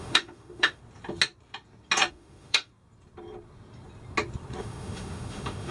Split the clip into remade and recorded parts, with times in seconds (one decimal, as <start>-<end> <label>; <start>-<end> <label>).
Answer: 0.0-0.8 remade; 0.8-2.1 recorded; 2.1-2.7 remade; 2.7-4.6 recorded; 4.6-5.7 remade